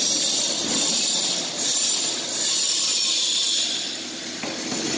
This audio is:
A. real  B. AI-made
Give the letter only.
A